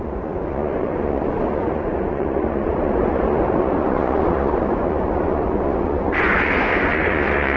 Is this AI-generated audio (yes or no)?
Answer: yes